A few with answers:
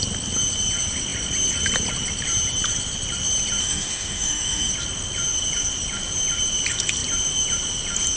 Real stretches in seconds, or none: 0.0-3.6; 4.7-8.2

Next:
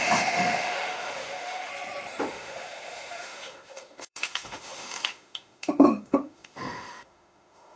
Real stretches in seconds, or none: 1.7-2.3

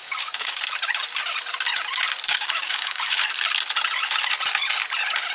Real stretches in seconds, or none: 0.6-2.3; 3.3-5.3

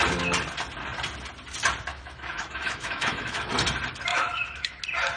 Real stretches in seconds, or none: 0.0-1.9; 3.5-4.1; 4.8-5.2